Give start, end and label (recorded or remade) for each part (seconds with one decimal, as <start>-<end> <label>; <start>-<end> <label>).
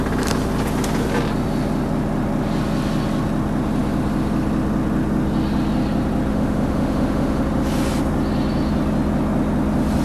0.0-6.3 recorded; 6.3-7.4 remade; 7.4-10.0 recorded